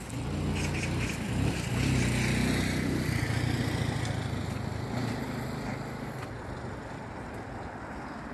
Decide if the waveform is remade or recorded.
recorded